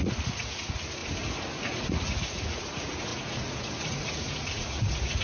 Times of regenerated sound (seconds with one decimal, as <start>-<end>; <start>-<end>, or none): 0.0-1.0; 1.6-5.2